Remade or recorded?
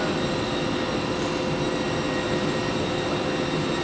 recorded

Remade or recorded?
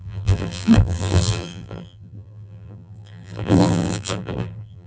remade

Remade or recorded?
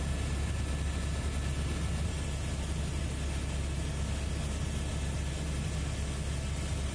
recorded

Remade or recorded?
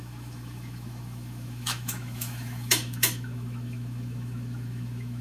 remade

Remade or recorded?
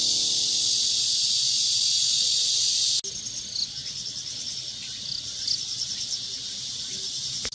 recorded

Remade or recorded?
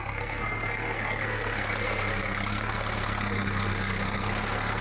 remade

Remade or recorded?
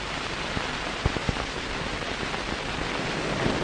recorded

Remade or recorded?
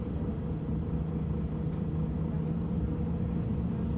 recorded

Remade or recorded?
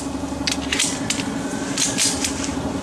recorded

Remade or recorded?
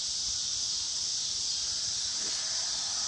recorded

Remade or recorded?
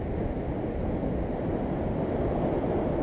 recorded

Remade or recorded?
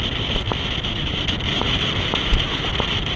recorded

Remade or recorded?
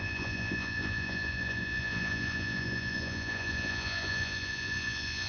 remade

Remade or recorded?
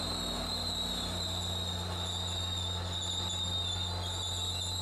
recorded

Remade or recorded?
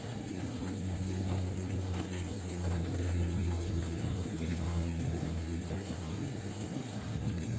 remade